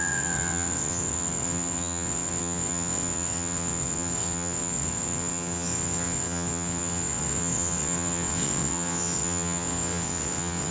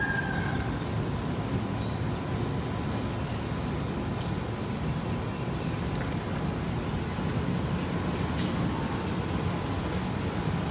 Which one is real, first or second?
second